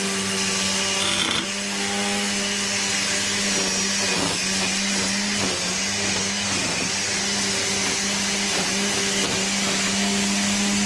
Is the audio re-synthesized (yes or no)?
no